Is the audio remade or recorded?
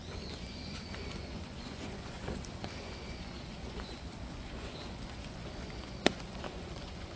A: remade